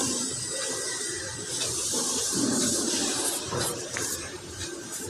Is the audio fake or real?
fake